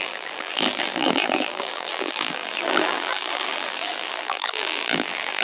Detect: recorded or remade remade